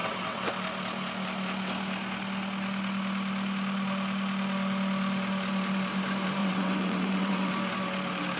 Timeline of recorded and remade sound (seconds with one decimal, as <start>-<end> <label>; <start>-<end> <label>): 0.0-0.5 remade; 0.5-6.4 recorded; 6.4-7.5 remade; 7.5-8.4 recorded